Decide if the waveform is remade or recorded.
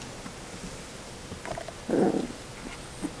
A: recorded